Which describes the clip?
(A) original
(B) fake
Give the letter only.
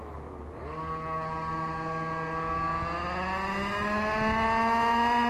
A